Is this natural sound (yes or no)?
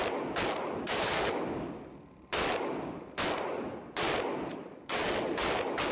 yes